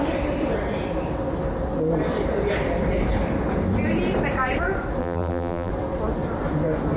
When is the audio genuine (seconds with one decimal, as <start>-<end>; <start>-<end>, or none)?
0.0-5.0; 5.7-7.0